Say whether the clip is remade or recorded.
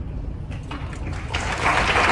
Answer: recorded